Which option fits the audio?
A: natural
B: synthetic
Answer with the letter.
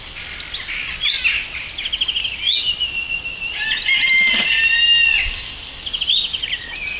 A